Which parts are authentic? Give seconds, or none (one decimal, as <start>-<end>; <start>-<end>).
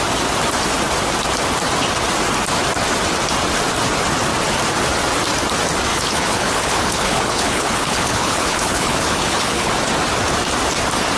0.0-5.9; 9.7-11.2